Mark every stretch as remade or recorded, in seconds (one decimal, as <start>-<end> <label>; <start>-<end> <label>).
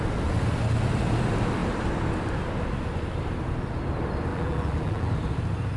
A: 0.0-4.3 recorded; 4.3-5.1 remade; 5.1-5.8 recorded